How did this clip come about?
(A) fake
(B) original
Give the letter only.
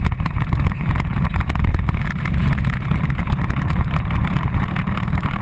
A